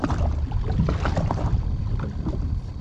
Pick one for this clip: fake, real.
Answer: real